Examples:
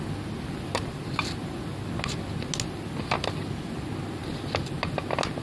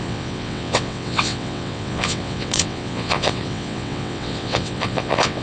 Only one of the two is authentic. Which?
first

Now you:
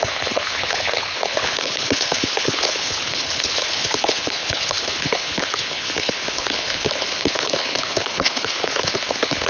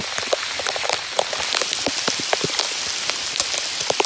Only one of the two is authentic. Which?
second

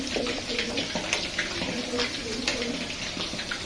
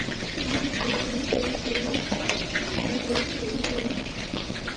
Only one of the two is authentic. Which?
first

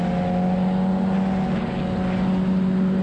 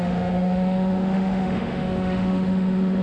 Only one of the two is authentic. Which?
first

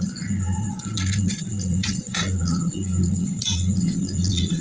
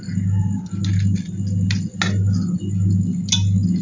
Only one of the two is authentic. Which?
second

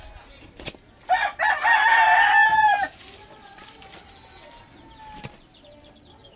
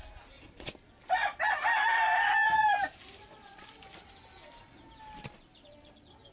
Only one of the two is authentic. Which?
first